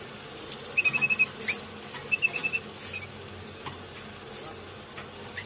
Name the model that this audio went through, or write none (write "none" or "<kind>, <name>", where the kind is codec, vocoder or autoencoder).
none